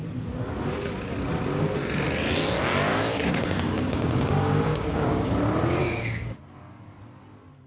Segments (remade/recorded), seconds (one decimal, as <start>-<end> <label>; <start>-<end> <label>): 0.0-2.9 recorded; 2.9-5.3 remade; 5.3-5.8 recorded; 5.8-6.4 remade; 6.4-7.7 recorded